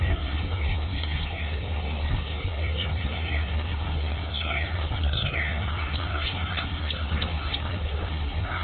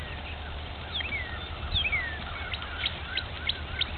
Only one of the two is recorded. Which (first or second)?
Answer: second